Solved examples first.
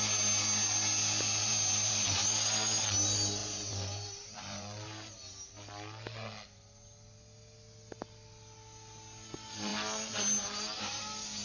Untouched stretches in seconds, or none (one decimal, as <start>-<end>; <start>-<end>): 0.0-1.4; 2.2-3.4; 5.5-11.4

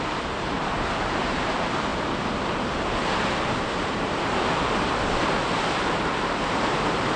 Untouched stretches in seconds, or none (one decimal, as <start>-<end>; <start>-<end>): none

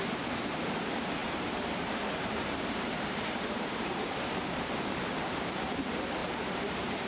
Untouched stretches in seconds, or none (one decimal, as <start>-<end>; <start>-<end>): none

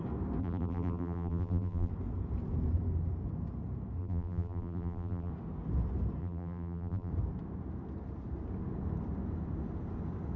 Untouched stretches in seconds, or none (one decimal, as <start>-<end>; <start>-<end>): 0.0-0.4; 1.9-4.0; 5.3-6.2; 7.1-10.4

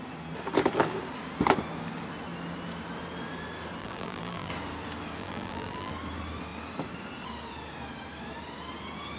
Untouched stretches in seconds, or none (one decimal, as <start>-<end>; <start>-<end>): 0.0-3.8; 4.5-5.2; 5.9-9.2